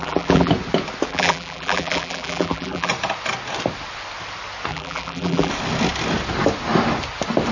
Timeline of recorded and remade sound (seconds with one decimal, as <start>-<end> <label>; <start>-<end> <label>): 0.0-0.5 remade; 0.5-1.1 recorded; 1.1-2.9 remade; 2.9-4.7 recorded; 4.7-5.5 remade; 5.5-7.5 recorded